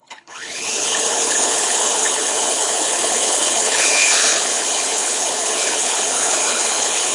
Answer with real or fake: fake